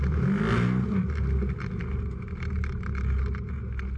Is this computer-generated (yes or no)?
no